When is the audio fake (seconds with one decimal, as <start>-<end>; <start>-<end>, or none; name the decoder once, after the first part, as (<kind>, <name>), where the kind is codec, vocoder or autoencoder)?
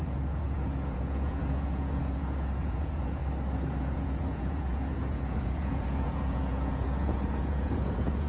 0.0-3.2 (vocoder, Vocos); 3.8-8.3